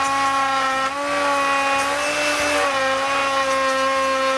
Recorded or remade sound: recorded